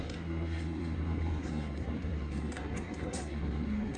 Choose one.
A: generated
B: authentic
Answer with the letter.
A